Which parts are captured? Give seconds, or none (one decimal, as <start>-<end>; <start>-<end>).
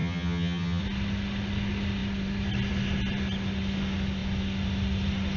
0.8-5.4